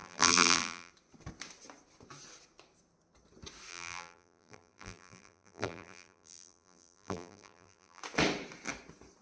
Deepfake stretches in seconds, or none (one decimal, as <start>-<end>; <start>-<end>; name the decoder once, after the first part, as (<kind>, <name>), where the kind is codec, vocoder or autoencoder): 0.0-0.9 (vocoder, BigVGAN v2); 3.7-8.0